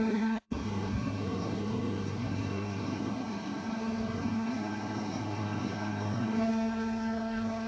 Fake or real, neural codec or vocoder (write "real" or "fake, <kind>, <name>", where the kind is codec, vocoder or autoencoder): fake, codec, SNAC